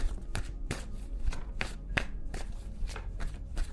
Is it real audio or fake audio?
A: fake